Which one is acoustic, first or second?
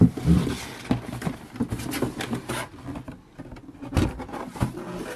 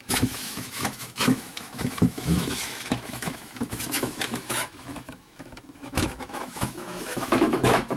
first